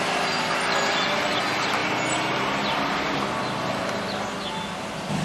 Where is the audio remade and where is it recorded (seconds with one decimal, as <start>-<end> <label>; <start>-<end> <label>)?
0.0-5.2 recorded